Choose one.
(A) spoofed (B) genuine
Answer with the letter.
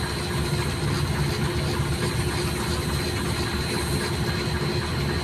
B